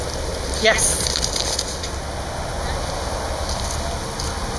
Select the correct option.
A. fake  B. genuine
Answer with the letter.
B